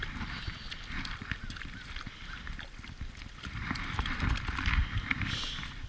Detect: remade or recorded recorded